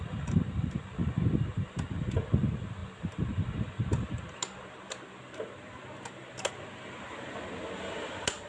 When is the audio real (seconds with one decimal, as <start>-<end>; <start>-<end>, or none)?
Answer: 0.0-8.5